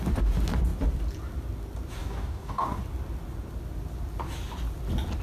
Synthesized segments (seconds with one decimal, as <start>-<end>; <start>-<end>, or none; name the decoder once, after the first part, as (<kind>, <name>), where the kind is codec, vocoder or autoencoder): 2.0-2.8 (codec, DAC)